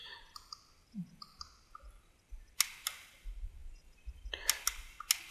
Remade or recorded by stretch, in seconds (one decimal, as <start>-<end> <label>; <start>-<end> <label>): 0.0-5.3 recorded